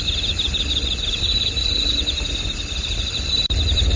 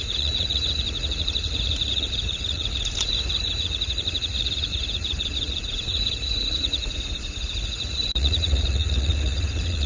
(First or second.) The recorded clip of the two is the first